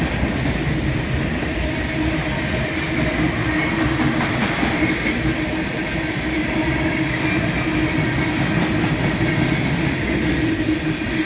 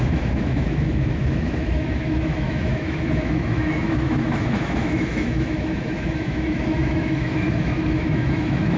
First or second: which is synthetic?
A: second